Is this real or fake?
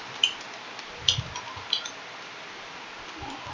real